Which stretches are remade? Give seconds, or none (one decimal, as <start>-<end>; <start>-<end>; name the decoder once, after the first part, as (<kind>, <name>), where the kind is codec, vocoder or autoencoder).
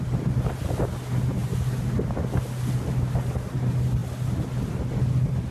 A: none